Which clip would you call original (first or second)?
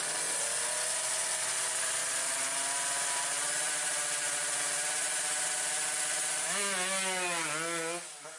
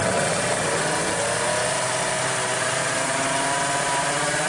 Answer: first